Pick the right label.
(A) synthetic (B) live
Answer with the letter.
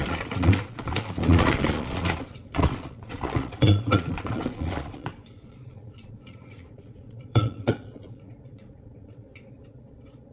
A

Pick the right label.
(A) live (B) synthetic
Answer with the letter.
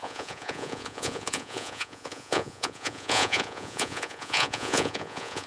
B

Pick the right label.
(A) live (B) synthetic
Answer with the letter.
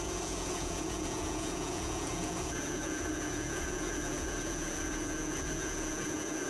B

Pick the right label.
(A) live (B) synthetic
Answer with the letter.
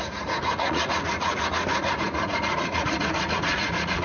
B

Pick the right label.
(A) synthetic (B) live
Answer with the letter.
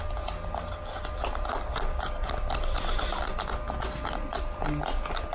B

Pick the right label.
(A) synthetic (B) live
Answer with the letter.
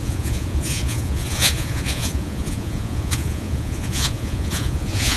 A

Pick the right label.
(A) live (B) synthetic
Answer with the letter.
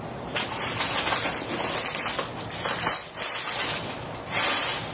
A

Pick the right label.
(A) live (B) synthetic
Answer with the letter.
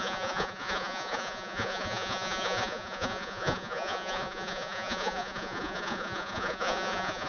B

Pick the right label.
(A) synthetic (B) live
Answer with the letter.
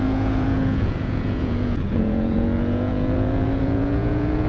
A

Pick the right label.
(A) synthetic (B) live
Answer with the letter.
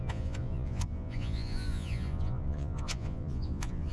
A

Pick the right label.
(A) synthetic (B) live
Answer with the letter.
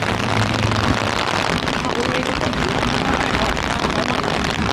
B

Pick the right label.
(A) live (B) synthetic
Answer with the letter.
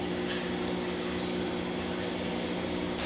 A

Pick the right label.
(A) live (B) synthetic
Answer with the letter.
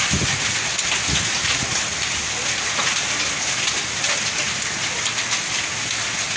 A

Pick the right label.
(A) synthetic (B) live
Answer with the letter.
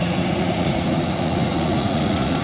A